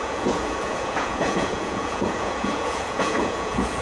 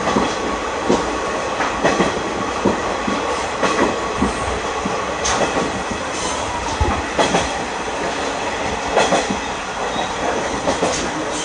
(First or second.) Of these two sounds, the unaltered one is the second